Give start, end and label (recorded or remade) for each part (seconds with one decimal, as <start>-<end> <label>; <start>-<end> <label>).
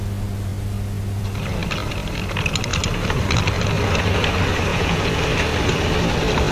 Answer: 0.0-4.7 recorded; 4.7-5.2 remade; 5.2-6.5 recorded